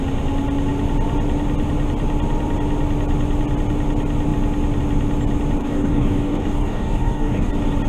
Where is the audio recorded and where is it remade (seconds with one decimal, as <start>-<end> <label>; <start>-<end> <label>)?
0.0-5.6 recorded; 5.6-7.5 remade; 7.5-7.9 recorded